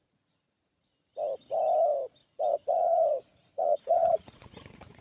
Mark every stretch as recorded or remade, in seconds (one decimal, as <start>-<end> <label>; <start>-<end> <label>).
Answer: 0.0-0.9 remade; 0.9-2.5 recorded; 2.5-5.0 remade